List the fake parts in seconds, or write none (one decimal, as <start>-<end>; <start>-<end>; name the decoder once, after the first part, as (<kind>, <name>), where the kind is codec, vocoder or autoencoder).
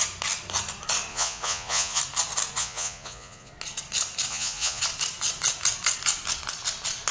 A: 1.1-2.0 (vocoder, Vocos); 2.6-3.5; 4.3-4.8